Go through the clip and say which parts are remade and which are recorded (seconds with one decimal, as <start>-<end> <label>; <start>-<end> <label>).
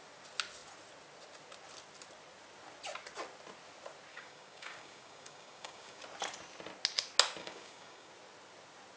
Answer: 0.0-4.1 recorded; 4.1-6.0 remade; 6.0-7.4 recorded; 7.4-8.1 remade; 8.1-9.0 recorded